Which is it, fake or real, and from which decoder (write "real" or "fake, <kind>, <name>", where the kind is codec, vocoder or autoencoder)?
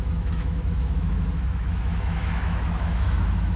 fake, autoencoder, DAC-VAE